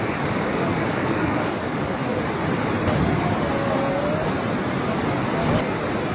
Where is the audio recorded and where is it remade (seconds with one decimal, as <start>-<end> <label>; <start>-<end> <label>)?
0.0-2.0 remade; 2.0-6.1 recorded

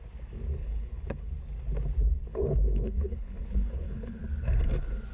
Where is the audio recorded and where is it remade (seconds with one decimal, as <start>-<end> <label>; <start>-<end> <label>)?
0.0-0.6 recorded; 0.6-1.3 remade; 1.3-2.3 recorded; 2.3-4.2 remade; 4.2-5.1 recorded

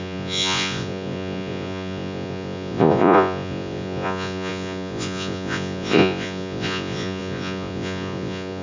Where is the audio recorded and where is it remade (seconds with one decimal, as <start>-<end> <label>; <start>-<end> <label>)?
0.0-8.6 remade

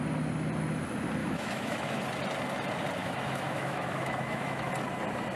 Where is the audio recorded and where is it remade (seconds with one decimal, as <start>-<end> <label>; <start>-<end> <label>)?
0.0-1.2 recorded; 1.2-2.0 remade; 2.0-3.0 recorded; 3.0-4.7 remade; 4.7-5.4 recorded